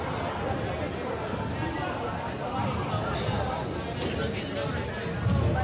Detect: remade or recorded recorded